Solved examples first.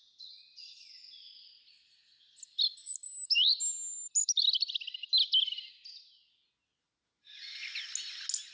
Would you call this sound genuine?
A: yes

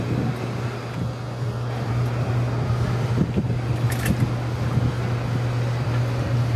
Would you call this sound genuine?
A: yes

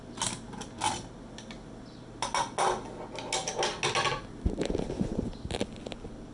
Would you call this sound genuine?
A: yes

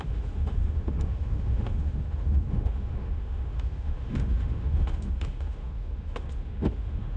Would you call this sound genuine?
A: no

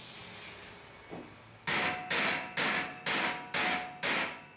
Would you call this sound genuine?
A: yes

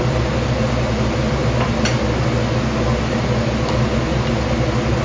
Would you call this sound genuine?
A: yes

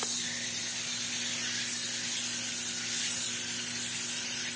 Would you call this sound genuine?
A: yes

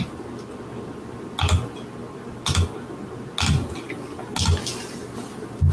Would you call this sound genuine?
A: yes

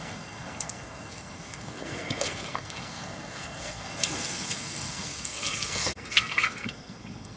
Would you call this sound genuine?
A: no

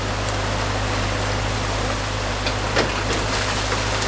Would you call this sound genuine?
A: yes